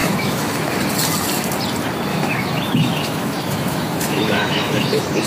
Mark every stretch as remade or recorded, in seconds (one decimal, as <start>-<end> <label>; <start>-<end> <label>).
0.0-0.8 remade; 0.8-2.1 recorded; 2.1-5.3 remade